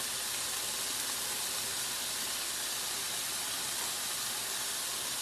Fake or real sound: real